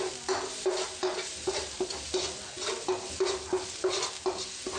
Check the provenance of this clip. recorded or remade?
recorded